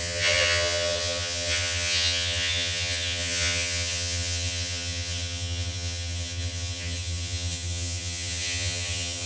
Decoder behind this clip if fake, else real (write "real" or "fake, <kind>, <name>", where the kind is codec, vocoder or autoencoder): fake, vocoder, HiFi-GAN